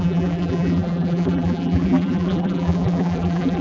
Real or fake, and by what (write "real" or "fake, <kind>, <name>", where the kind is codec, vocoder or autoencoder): fake, vocoder, BigVGAN v2